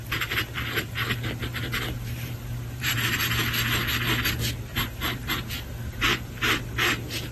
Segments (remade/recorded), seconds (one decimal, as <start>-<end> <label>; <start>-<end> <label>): 0.0-1.5 recorded; 1.5-2.9 remade; 2.9-4.7 recorded; 4.7-6.6 remade; 6.6-7.3 recorded